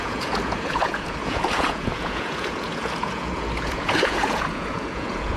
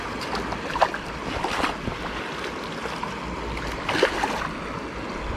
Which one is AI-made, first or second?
first